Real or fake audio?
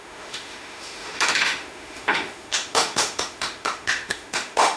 fake